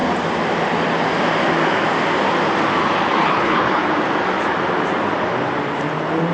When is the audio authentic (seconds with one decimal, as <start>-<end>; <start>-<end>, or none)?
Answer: 0.0-3.2; 3.8-6.3